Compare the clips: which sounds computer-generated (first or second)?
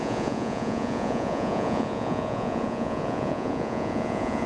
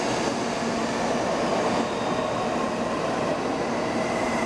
first